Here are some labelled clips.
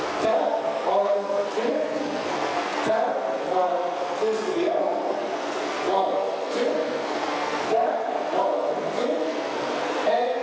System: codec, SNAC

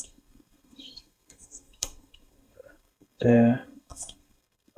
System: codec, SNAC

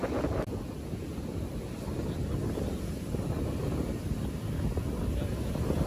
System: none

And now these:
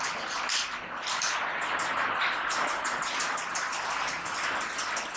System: none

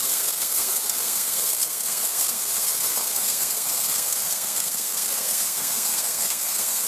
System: codec, SNAC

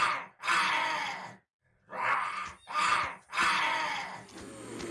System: none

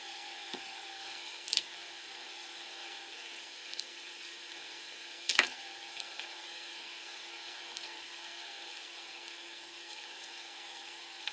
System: codec, SNAC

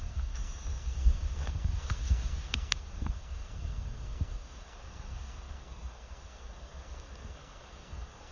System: codec, SNAC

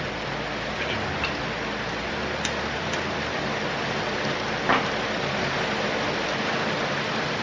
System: none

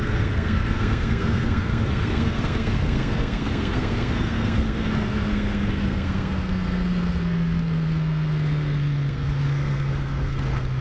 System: codec, SNAC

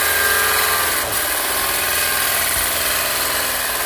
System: none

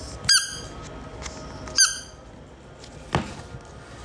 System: none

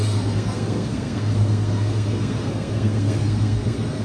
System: codec, SNAC